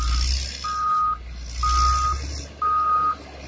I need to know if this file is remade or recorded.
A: recorded